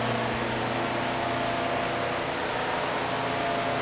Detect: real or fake real